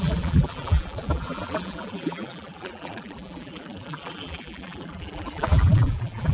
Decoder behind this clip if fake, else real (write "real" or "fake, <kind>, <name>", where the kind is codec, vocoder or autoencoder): fake, vocoder, BigVGAN v2